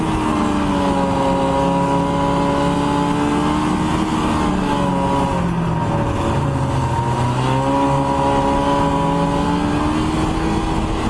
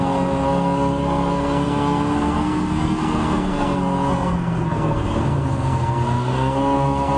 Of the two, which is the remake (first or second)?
second